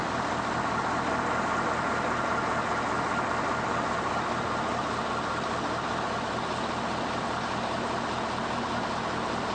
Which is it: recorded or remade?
recorded